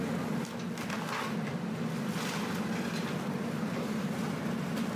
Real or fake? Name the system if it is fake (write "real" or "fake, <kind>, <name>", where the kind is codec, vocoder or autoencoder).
real